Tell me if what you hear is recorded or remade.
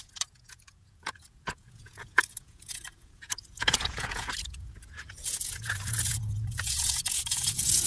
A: remade